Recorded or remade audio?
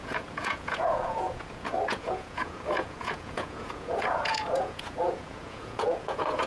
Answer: remade